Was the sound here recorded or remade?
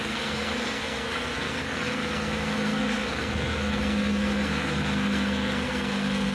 remade